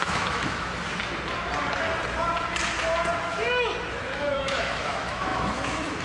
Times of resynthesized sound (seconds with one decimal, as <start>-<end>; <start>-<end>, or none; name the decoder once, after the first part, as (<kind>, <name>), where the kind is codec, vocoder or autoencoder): 0.0-0.7 (autoencoder, DAC-VAE); 3.9-6.0